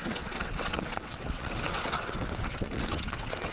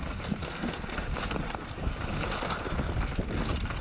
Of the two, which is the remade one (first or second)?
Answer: first